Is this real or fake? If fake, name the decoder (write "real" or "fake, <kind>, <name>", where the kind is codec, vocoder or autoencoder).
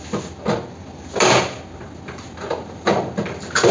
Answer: real